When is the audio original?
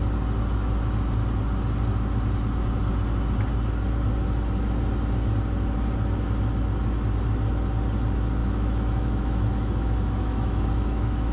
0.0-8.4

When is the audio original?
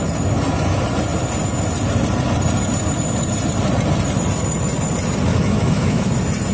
0.0-5.3; 6.1-6.5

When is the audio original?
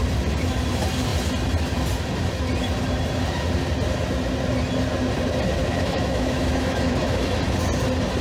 0.0-5.6; 7.2-8.2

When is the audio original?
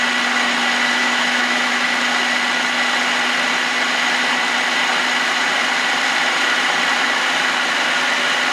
0.0-1.0; 2.0-8.5